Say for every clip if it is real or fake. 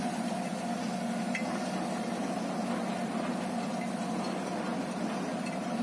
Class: real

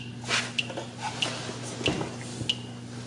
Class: real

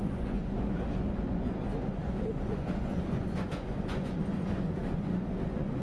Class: fake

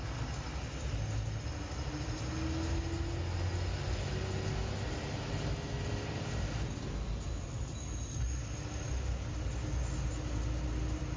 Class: real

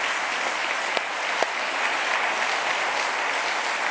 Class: real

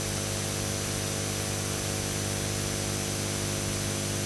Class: real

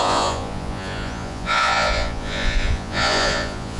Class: fake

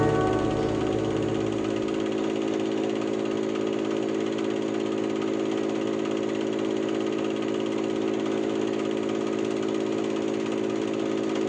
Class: real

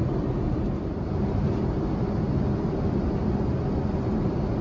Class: real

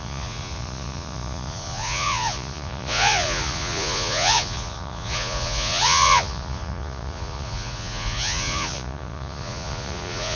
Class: fake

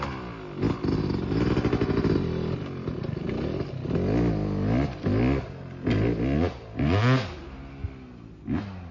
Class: real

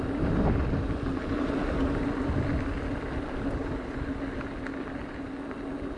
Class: real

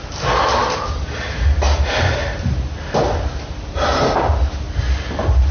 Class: real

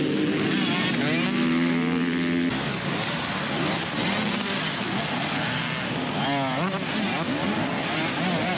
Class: real